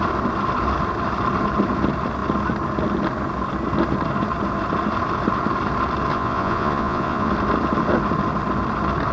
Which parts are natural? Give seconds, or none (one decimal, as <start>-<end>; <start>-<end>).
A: 0.0-6.1; 7.3-9.1